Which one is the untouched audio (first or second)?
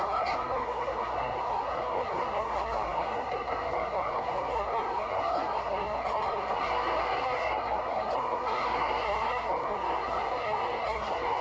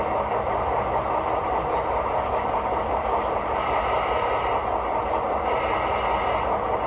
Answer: second